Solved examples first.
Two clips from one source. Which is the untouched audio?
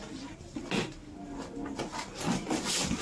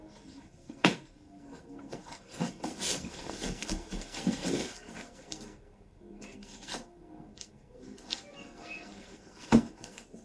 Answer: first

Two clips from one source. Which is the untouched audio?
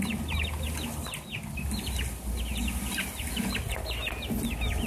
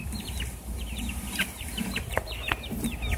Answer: first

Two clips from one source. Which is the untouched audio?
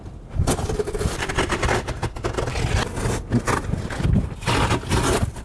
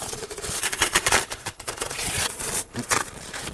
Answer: first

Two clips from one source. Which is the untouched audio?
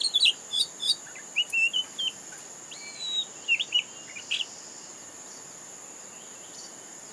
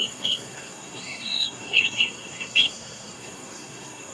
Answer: first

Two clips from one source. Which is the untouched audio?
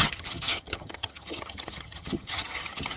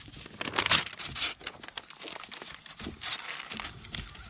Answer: second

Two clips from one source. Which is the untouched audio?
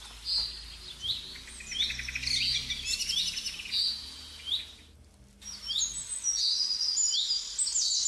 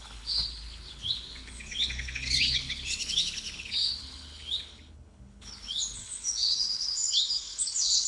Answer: first